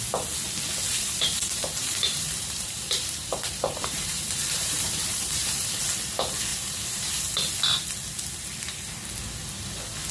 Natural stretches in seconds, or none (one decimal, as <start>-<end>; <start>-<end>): 0.0-0.9; 5.8-6.5; 7.2-10.1